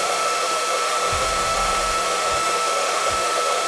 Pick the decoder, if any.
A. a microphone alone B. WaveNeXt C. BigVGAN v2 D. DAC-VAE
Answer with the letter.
D